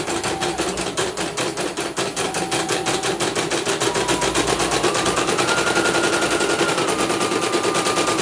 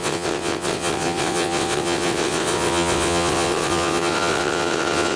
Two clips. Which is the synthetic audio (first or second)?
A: second